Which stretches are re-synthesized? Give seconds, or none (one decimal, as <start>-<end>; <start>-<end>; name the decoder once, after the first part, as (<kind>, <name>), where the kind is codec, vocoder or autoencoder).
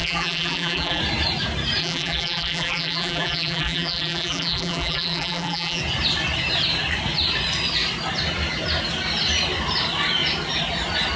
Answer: 0.0-1.0 (vocoder, BigVGAN v2); 1.8-5.8